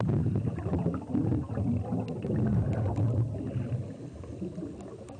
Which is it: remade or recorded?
recorded